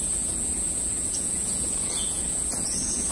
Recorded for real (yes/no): no